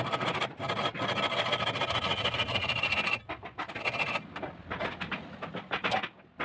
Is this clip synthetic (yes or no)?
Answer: no